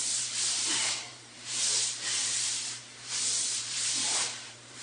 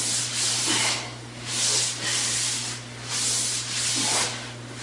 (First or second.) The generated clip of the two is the first